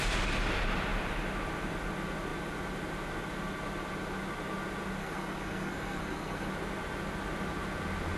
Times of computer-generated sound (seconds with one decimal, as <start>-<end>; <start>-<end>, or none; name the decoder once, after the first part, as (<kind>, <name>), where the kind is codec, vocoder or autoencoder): 5.0-6.5 (codec, SNAC)